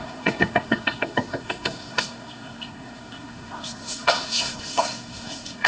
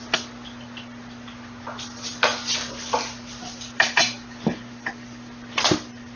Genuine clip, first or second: second